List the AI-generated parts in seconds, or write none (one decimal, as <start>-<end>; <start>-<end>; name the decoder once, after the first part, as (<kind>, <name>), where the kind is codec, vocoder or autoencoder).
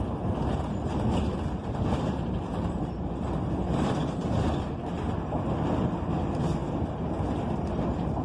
1.6-4.5 (vocoder, BigVGAN v2)